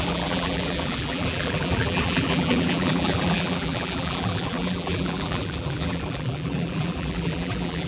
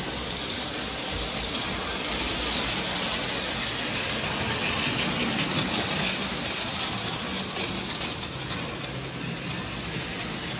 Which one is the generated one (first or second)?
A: first